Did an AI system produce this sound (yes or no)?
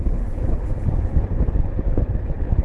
yes